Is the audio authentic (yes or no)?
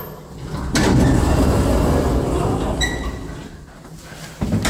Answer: yes